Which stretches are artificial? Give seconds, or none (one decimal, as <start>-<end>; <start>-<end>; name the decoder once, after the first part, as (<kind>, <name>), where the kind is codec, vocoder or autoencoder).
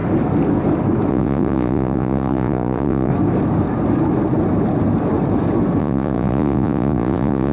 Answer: 1.1-3.1 (vocoder, Vocos); 5.8-7.5